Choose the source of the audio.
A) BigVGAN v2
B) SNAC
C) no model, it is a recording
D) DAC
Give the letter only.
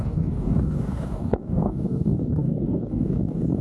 D